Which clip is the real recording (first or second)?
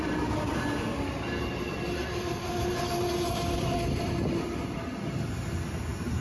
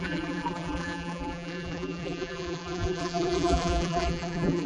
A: first